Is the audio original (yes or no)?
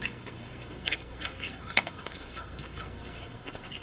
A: no